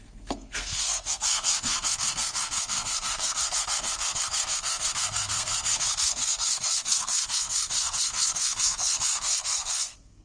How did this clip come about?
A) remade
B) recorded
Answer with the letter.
A